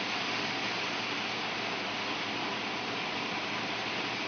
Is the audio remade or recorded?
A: recorded